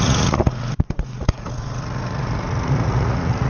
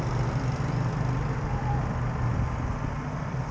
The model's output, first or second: first